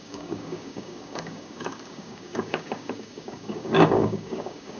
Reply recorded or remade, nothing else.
remade